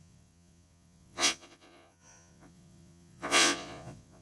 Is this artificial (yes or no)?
yes